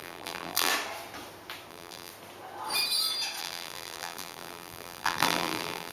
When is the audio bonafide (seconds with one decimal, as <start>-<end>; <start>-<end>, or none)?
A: 0.7-1.7; 2.1-3.4